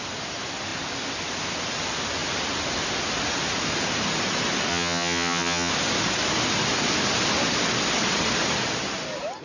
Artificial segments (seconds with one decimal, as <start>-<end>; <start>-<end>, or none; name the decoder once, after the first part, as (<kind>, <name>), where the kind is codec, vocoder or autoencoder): 4.7-5.7 (vocoder, HiFi-GAN)